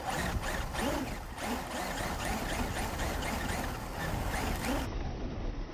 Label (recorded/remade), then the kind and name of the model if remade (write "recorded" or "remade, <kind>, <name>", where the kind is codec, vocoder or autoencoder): recorded